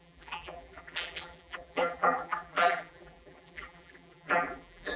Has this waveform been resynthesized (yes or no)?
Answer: yes